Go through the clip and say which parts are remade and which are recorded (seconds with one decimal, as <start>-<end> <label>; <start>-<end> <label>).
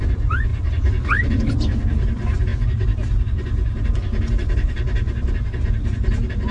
0.0-6.5 recorded